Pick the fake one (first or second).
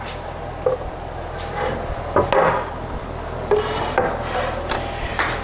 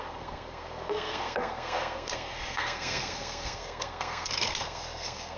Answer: second